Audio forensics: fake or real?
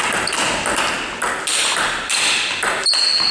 real